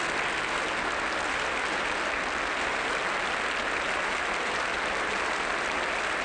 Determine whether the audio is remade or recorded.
recorded